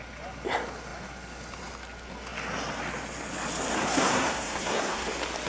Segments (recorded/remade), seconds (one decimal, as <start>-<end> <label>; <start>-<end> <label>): 0.0-3.8 recorded; 3.8-5.1 remade; 5.1-5.5 recorded